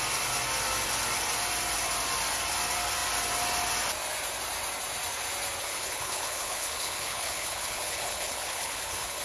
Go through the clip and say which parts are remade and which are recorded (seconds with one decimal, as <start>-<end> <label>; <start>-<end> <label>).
0.0-5.6 recorded; 5.6-9.2 remade